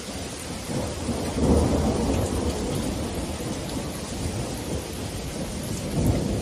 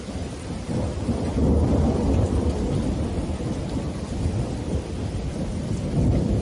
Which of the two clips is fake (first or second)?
second